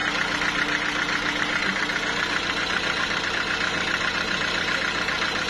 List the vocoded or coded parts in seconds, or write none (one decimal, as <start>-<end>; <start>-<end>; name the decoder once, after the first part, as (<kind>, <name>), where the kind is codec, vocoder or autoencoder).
none